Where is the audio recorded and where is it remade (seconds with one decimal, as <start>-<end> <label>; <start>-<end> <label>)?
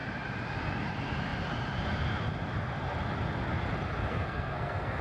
0.0-4.1 recorded; 4.1-5.0 remade